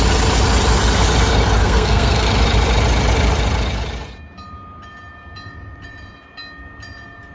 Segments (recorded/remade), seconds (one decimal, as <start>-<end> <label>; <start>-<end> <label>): 0.0-1.6 recorded; 1.6-2.3 remade; 2.3-7.3 recorded